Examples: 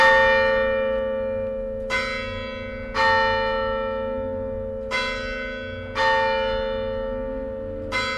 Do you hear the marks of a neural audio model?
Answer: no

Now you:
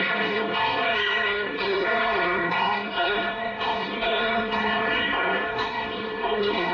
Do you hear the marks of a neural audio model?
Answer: yes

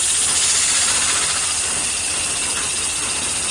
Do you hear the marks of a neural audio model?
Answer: no